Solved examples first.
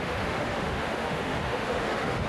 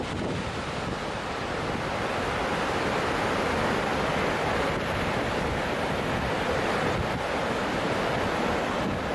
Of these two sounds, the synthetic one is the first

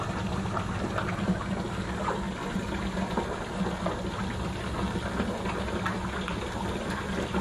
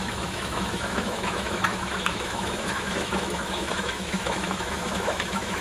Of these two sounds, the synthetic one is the second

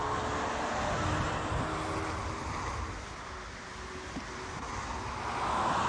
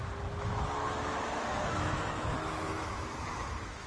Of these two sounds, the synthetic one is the second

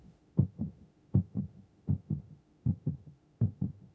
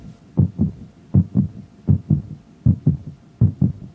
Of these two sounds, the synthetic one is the first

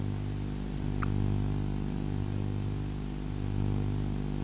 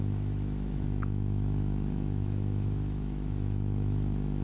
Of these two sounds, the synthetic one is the second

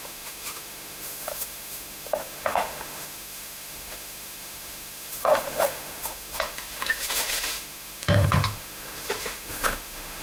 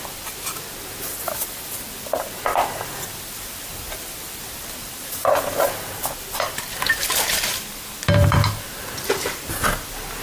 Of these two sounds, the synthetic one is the first